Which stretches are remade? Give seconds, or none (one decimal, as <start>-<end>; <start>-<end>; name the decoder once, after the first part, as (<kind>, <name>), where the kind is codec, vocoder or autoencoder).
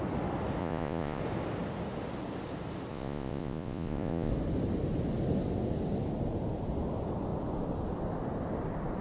0.6-1.2 (vocoder, Vocos); 2.9-4.3